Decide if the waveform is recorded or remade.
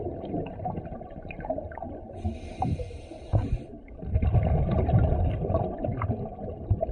recorded